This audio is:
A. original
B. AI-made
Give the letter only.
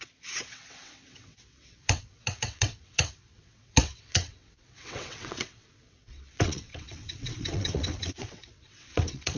B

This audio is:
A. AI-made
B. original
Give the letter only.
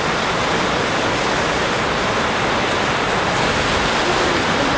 A